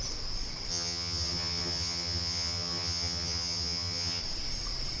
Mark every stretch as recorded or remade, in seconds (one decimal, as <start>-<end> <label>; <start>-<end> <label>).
0.0-0.7 recorded; 0.7-4.2 remade; 4.2-5.0 recorded